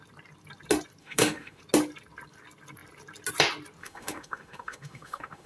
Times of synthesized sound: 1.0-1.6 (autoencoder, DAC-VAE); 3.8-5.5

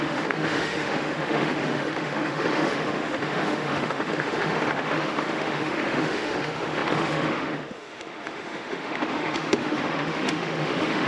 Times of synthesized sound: 0.0-11.1 (autoencoder, DAC-VAE)

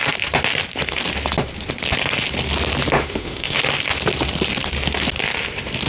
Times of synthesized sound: 3.0-3.6 (autoencoder, DAC-VAE)

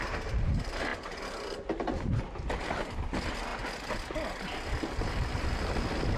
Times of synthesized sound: none